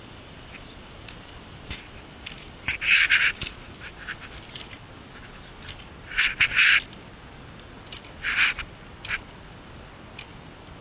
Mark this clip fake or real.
real